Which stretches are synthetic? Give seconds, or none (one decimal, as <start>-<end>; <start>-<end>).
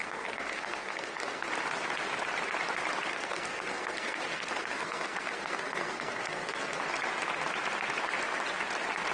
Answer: 0.0-1.5; 3.1-6.8